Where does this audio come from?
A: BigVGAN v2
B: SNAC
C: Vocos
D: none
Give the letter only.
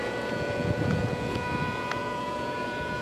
C